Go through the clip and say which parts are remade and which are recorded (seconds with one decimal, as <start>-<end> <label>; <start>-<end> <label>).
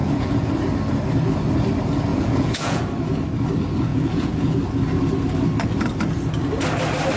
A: 0.0-0.5 remade; 0.5-2.1 recorded; 2.1-2.8 remade; 2.8-3.9 recorded; 3.9-4.6 remade; 4.6-7.2 recorded